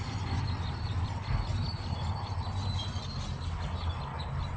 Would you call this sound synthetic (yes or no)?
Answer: no